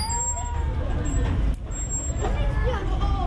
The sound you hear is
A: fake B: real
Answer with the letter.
B